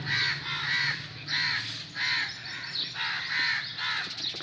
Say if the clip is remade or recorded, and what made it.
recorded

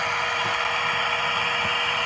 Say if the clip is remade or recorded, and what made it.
recorded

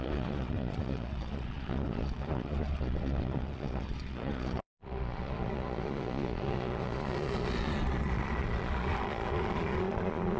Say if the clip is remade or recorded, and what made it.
remade, vocoder, Vocos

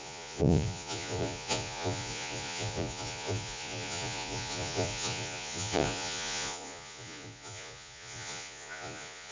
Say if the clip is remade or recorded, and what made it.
remade, vocoder, Vocos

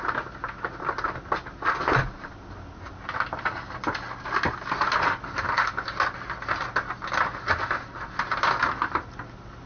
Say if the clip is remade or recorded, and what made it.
recorded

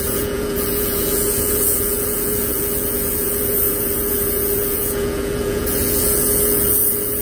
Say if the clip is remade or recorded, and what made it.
remade, vocoder, Vocos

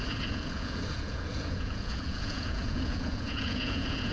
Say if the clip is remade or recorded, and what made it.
remade, vocoder, Vocos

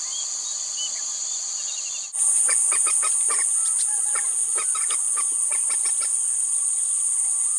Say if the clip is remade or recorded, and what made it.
recorded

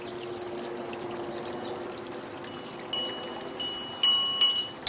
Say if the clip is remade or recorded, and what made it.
recorded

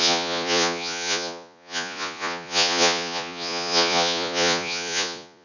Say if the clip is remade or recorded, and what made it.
remade, vocoder, Vocos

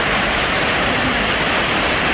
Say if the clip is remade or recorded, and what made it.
remade, vocoder, BigVGAN v2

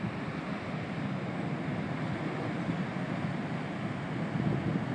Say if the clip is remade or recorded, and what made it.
recorded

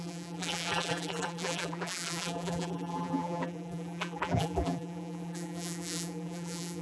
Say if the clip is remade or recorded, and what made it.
remade, vocoder, BigVGAN v2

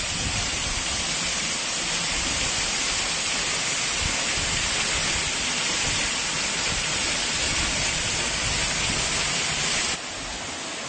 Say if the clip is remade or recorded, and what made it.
recorded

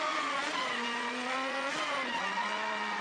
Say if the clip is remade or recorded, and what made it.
remade, vocoder, Vocos